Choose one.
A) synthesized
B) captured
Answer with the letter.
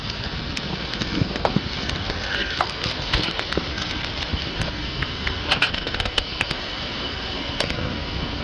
A